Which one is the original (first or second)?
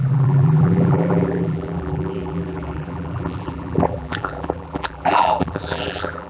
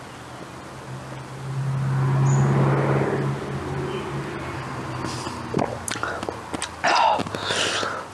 second